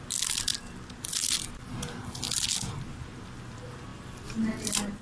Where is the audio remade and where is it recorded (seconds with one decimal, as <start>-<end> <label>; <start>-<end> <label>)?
0.0-5.0 recorded